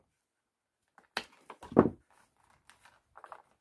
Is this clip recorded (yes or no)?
yes